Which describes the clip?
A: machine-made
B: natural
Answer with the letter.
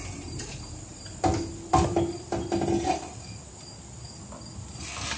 B